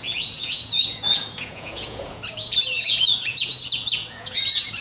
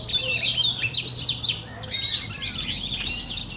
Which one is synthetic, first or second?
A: first